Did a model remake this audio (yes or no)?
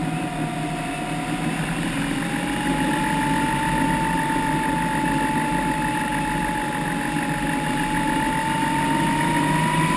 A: no